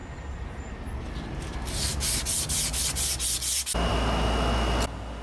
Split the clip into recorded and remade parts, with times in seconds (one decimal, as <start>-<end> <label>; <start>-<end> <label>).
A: 0.0-1.0 remade; 1.0-5.2 recorded

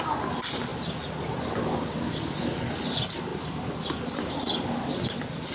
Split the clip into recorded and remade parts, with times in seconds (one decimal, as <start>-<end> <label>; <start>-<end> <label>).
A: 0.0-5.5 recorded

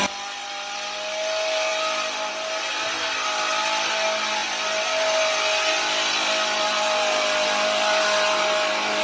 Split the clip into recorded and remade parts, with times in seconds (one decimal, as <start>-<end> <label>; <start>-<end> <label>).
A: 0.0-9.0 recorded

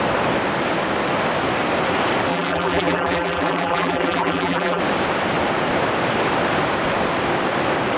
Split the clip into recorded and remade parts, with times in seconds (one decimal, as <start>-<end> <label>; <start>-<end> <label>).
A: 0.0-2.3 recorded; 2.3-4.8 remade; 4.8-8.0 recorded

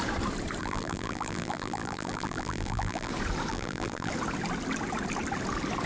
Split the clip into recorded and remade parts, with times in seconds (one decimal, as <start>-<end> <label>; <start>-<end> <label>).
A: 0.0-0.6 recorded; 0.6-3.1 remade; 3.1-3.5 recorded; 3.5-4.1 remade; 4.1-5.9 recorded

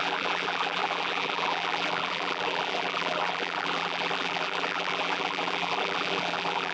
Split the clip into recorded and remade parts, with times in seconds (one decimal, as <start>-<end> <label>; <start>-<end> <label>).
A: 0.0-6.7 remade